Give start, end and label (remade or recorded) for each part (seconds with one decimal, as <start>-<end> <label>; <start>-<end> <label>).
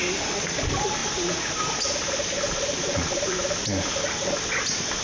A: 0.0-1.0 recorded; 1.0-4.0 remade; 4.0-5.0 recorded